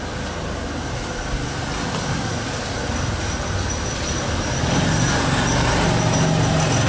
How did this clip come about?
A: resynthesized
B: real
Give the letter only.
B